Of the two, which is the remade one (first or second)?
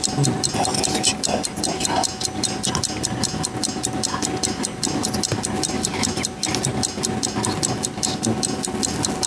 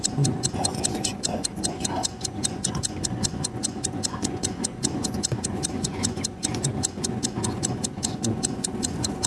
second